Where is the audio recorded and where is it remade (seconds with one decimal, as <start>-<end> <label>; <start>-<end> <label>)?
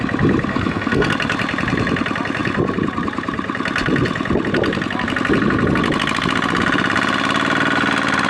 0.0-0.5 recorded; 0.5-1.1 remade; 1.1-8.3 recorded